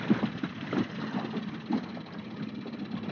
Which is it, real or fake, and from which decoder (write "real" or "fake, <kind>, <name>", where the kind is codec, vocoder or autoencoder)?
fake, vocoder, BigVGAN v2